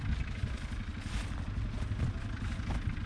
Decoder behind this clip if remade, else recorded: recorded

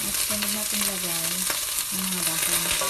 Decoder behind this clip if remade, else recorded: recorded